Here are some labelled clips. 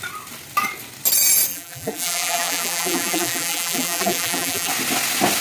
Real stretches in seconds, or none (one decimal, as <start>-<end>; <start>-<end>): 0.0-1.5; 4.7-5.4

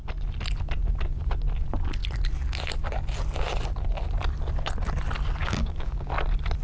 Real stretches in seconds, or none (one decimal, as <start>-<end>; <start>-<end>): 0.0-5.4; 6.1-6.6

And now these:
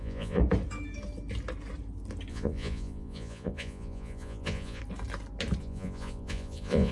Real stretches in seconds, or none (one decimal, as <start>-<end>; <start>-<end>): 0.4-2.3; 4.8-5.6